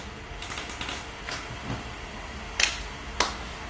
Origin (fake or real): real